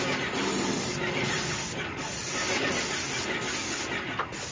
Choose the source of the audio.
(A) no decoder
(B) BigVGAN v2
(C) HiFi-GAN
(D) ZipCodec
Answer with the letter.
A